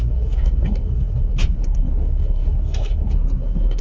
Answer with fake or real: fake